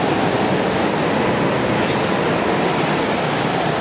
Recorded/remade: recorded